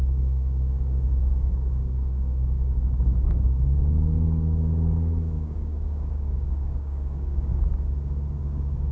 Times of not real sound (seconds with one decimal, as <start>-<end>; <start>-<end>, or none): 0.0-7.5; 8.4-8.9